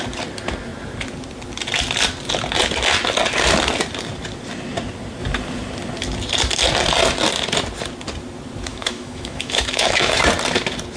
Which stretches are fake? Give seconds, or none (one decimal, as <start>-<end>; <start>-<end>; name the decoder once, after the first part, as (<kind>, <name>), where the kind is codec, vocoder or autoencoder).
8.7-10.2 (autoencoder, DAC-VAE)